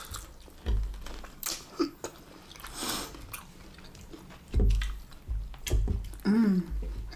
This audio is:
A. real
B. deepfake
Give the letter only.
A